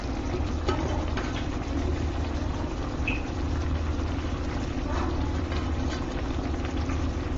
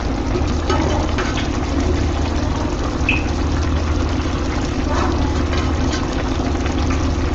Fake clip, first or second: first